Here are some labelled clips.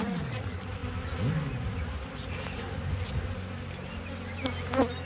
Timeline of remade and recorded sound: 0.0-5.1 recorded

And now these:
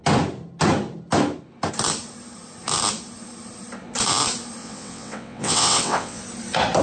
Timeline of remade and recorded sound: 0.0-4.6 recorded; 4.6-6.2 remade; 6.2-6.8 recorded

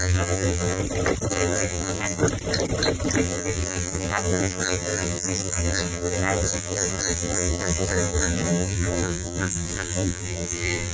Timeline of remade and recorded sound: 0.0-0.8 remade; 0.8-1.3 recorded; 1.3-2.2 remade; 2.2-3.2 recorded; 3.2-10.9 remade

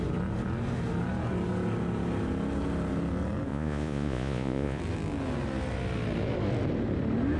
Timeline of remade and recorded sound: 0.0-3.5 recorded; 3.5-4.8 remade; 4.8-7.4 recorded

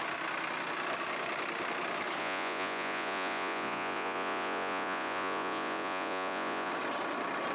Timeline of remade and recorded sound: 0.0-2.2 recorded; 2.2-6.7 remade; 6.7-7.5 recorded